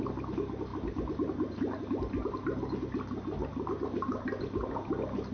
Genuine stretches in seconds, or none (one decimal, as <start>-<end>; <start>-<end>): 0.0-5.3